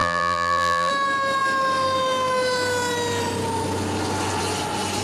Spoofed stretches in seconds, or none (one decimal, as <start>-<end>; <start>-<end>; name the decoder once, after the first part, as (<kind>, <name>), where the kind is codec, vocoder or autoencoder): 0.0-0.9 (vocoder, BigVGAN v2)